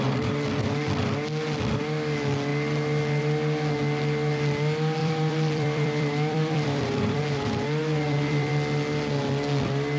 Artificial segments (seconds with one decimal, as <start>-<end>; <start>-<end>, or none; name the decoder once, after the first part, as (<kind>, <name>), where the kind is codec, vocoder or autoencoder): 5.0-7.2 (vocoder, BigVGAN v2); 7.8-8.5